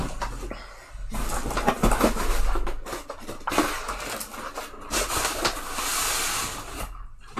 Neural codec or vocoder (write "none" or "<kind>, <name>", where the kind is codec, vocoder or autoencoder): none